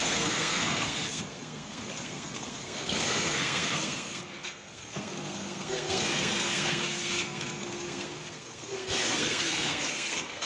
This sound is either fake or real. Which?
fake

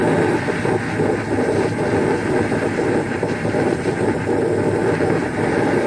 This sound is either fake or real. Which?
real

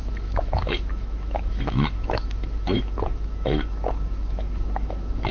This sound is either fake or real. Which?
fake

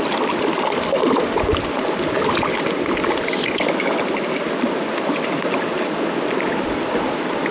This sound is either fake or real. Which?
real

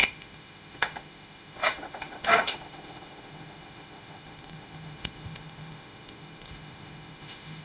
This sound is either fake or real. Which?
fake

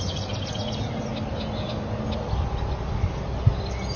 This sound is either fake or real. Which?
real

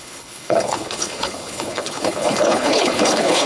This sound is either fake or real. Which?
fake